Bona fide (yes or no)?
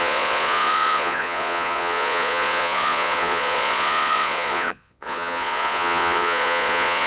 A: no